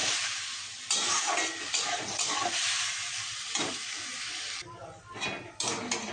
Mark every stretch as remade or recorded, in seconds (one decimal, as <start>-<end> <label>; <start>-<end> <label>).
0.0-3.7 remade; 3.7-6.1 recorded